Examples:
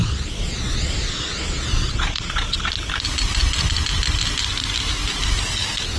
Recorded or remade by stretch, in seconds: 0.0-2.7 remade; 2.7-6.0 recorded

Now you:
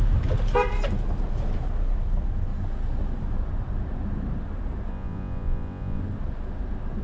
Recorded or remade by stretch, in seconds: 0.0-4.9 recorded; 4.9-6.0 remade; 6.0-7.0 recorded

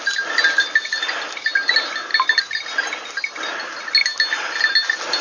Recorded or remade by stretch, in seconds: 0.0-5.2 recorded

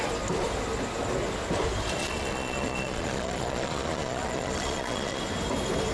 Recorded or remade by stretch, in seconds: 0.0-2.0 recorded; 2.0-5.2 remade; 5.2-5.9 recorded

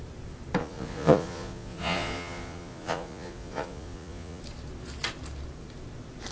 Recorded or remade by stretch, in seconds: 0.0-0.6 recorded; 0.6-4.4 remade; 4.4-6.3 recorded

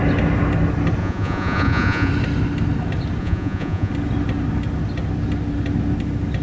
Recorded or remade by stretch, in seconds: 0.0-1.0 recorded; 1.0-2.1 remade; 2.1-3.2 recorded; 3.2-3.9 remade; 3.9-6.4 recorded

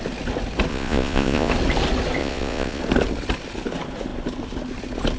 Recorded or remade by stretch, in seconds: 0.0-0.7 recorded; 0.7-1.5 remade; 1.5-2.2 recorded; 2.2-2.8 remade; 2.8-5.2 recorded